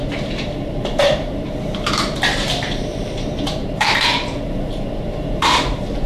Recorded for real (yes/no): no